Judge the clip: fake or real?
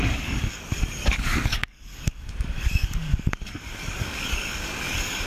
fake